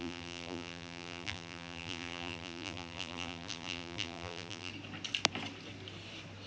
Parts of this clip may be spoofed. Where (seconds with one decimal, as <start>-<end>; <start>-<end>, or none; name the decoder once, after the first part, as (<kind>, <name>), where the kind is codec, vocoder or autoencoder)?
0.0-4.7 (vocoder, BigVGAN v2)